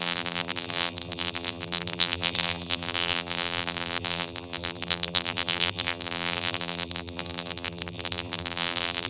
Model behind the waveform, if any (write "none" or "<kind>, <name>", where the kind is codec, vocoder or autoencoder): vocoder, BigVGAN v2